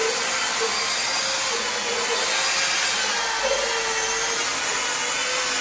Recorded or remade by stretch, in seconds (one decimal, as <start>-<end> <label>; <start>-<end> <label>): 0.0-5.6 recorded